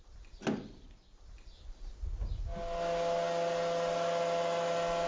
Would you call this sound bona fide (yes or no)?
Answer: yes